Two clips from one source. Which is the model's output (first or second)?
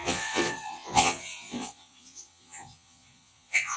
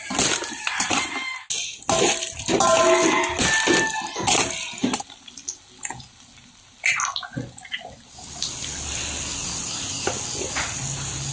first